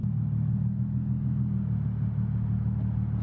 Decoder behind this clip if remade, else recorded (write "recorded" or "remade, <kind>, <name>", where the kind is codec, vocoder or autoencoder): recorded